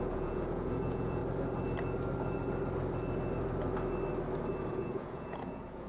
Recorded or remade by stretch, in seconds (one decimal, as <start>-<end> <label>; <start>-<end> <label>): 0.0-1.2 remade; 1.2-4.7 recorded; 4.7-5.9 remade